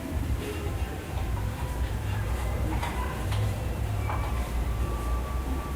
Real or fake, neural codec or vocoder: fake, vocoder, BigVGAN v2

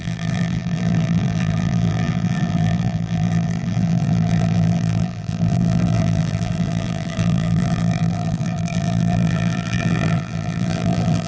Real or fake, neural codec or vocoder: fake, vocoder, BigVGAN v2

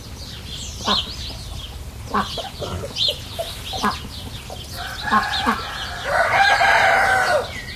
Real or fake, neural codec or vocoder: real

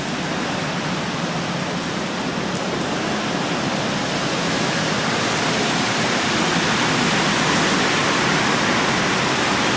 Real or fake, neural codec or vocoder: real